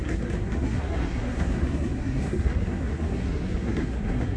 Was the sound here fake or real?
fake